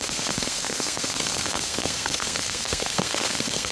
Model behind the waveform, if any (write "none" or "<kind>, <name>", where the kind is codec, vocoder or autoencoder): codec, SNAC